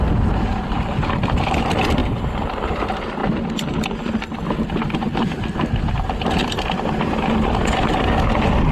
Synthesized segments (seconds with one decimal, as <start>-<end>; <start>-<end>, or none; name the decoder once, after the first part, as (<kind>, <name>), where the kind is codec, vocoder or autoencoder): 2.0-2.8 (vocoder, BigVGAN v2)